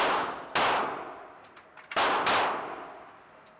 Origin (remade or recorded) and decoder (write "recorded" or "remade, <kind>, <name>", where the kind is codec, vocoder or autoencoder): recorded